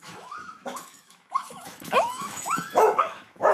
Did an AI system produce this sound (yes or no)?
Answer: yes